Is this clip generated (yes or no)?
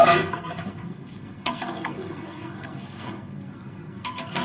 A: yes